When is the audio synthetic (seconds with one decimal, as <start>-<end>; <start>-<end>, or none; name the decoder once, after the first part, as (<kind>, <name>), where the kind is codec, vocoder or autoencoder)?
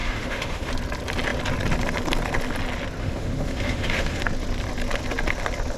0.0-0.7 (autoencoder, DAC-VAE); 3.0-4.2